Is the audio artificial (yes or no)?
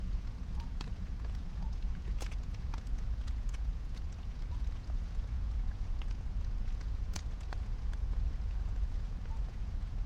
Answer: yes